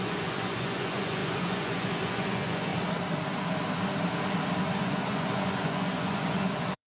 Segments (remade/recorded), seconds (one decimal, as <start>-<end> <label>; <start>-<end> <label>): 0.0-2.7 remade; 2.7-4.8 recorded; 4.8-6.9 remade